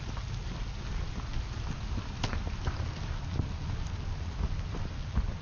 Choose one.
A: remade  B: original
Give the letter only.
B